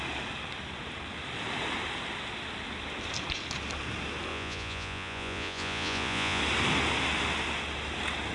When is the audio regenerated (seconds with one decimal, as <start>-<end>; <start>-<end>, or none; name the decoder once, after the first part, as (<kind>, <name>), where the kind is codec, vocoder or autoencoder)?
4.3-6.4 (vocoder, Vocos)